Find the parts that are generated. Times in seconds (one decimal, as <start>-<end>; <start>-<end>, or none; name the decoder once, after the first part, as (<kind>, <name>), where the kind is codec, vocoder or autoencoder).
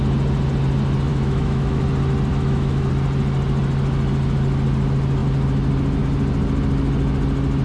1.1-1.8 (autoencoder, DAC-VAE); 2.3-2.9